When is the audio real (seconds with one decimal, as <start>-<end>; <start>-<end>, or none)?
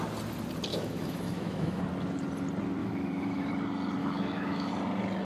0.0-0.7; 1.8-2.8; 3.5-4.0; 4.7-5.2